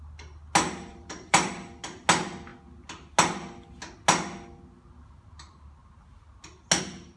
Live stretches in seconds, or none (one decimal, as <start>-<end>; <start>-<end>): 0.0-0.9; 1.5-7.2